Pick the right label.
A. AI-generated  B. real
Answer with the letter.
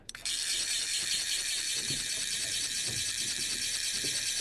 A